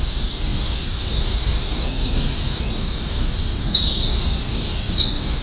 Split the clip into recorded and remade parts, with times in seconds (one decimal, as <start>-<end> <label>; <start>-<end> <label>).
0.0-5.4 remade